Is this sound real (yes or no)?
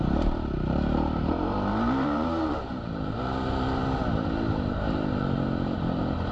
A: no